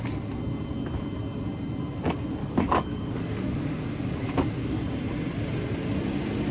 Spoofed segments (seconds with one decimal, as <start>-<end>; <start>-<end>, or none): 2.4-4.8